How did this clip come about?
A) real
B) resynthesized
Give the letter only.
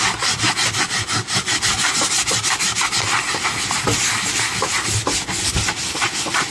A